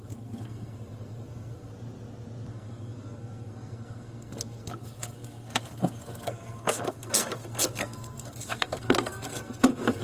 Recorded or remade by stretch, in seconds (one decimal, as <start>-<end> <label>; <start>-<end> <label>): 0.0-1.7 remade; 1.7-2.5 recorded; 2.5-10.0 remade